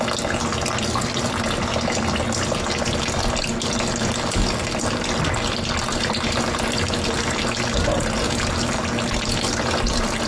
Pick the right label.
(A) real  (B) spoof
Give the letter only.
A